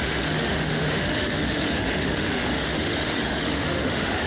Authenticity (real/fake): fake